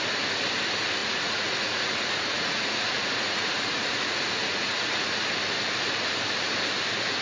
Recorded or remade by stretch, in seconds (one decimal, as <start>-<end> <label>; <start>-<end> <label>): 0.0-1.0 recorded; 1.0-5.3 remade; 5.3-7.2 recorded